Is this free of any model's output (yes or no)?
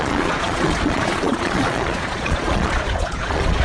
no